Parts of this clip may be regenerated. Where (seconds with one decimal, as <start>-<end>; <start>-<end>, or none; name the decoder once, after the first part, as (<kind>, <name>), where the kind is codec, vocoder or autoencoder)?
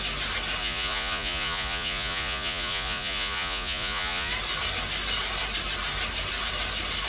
0.6-4.3 (vocoder, Vocos)